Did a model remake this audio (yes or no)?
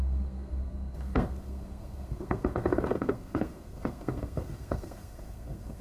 yes